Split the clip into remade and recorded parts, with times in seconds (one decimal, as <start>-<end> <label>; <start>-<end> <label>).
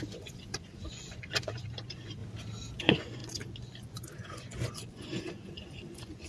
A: 0.0-2.2 remade; 2.2-2.8 recorded; 2.8-6.3 remade